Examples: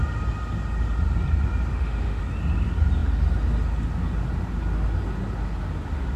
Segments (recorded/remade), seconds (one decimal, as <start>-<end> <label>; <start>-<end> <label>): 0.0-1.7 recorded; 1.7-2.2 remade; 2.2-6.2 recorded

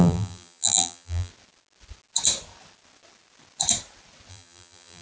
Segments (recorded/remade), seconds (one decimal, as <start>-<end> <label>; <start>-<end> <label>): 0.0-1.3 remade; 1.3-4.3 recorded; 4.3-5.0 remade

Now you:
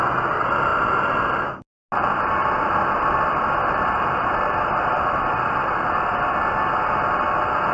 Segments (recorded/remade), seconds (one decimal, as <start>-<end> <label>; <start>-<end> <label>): 0.0-2.4 recorded; 2.4-5.8 remade; 5.8-7.7 recorded

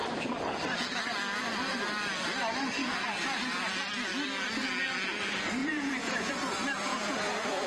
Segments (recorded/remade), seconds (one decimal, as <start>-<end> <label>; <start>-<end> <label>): 0.0-5.6 recorded; 5.6-6.3 remade; 6.3-6.9 recorded; 6.9-7.7 remade